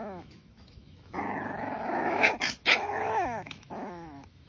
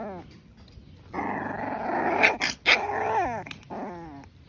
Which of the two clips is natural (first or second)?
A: second